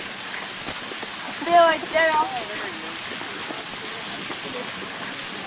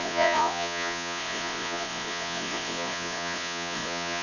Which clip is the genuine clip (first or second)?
first